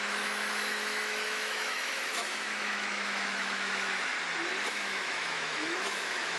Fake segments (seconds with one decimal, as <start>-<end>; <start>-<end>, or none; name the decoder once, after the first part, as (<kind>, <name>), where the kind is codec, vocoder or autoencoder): 0.0-4.1 (autoencoder, DAC-VAE); 4.7-6.4